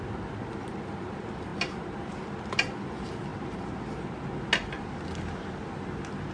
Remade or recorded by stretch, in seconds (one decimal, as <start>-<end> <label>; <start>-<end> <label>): 0.0-6.3 recorded